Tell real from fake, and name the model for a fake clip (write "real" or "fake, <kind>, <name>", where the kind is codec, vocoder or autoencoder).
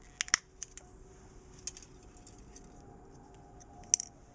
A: real